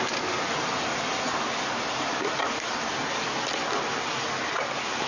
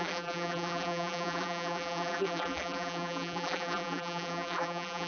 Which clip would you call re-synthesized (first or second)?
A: second